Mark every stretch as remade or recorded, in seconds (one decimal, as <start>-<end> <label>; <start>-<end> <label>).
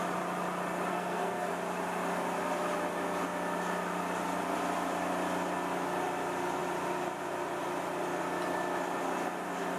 0.0-0.9 recorded; 0.9-1.5 remade; 1.5-9.8 recorded